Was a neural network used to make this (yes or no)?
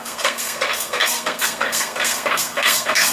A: yes